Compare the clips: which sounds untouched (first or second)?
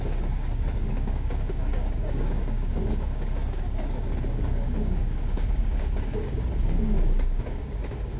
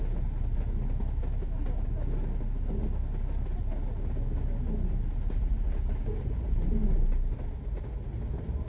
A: second